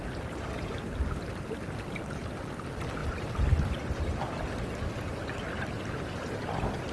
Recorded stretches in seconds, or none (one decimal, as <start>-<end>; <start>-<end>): 0.0-3.0; 4.2-6.9